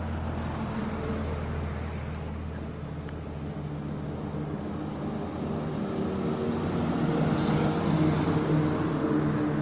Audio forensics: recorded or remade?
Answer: recorded